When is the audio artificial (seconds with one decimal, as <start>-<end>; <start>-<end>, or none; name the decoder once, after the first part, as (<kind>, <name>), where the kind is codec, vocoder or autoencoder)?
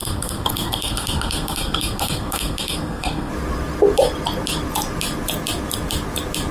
0.0-3.3 (codec, SNAC)